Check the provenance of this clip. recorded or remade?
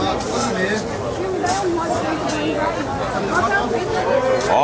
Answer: recorded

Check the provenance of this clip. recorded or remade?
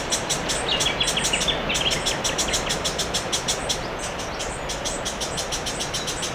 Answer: recorded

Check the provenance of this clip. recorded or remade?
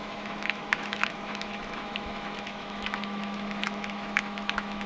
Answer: remade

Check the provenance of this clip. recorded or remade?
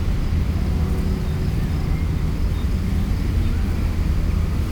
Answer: recorded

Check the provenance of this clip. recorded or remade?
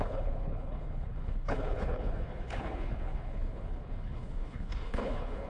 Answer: remade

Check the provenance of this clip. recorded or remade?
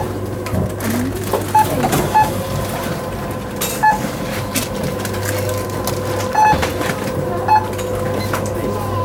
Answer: recorded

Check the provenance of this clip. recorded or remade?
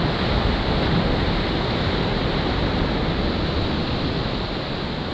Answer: recorded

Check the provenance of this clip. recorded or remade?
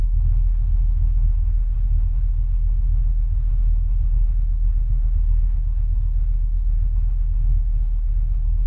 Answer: remade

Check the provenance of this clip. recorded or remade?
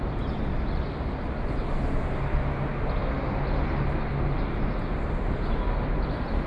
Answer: recorded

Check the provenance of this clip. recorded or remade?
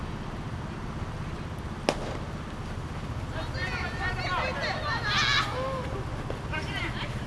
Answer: recorded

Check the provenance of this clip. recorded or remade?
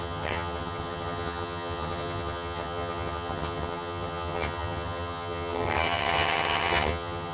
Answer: remade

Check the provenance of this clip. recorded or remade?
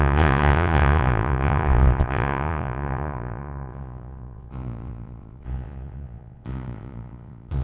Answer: remade